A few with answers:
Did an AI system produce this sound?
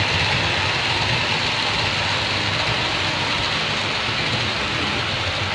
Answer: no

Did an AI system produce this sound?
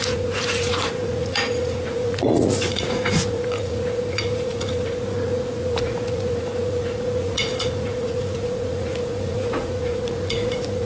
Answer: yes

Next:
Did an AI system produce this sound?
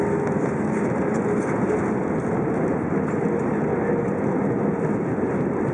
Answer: no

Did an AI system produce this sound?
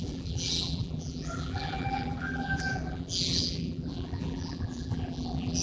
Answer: yes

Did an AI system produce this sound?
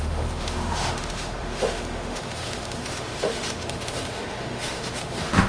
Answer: yes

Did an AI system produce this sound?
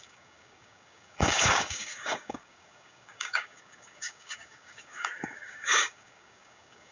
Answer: yes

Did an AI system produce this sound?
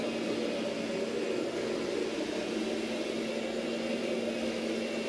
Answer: no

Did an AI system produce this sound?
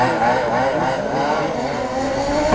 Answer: no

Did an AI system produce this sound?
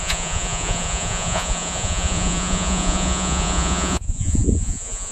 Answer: yes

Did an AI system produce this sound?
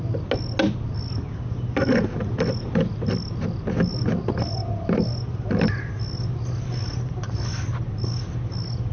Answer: no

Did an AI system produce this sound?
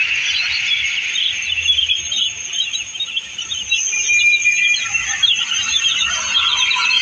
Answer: yes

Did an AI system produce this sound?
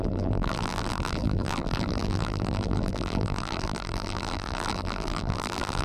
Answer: yes